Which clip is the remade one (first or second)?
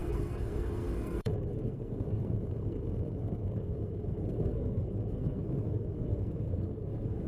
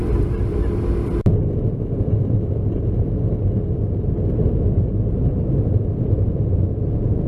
first